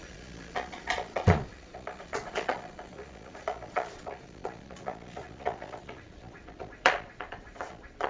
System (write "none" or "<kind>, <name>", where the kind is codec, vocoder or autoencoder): vocoder, Vocos